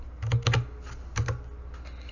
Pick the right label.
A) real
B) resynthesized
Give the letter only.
A